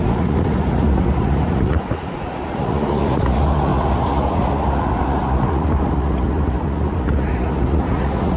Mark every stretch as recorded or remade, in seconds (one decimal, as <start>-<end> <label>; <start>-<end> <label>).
0.0-8.4 remade